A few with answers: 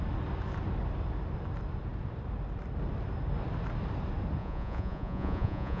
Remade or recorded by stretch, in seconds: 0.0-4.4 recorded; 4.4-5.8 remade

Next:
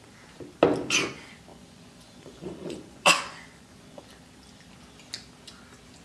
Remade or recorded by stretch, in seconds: 0.0-1.5 recorded; 1.5-4.0 remade; 4.0-6.0 recorded

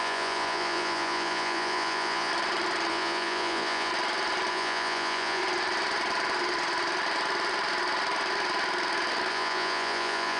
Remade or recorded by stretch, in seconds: 0.0-2.3 remade; 2.3-2.9 recorded; 2.9-3.9 remade; 3.9-4.5 recorded; 4.5-5.4 remade; 5.4-9.3 recorded; 9.3-10.4 remade